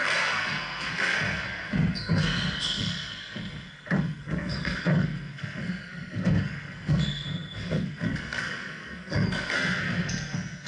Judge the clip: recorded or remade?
remade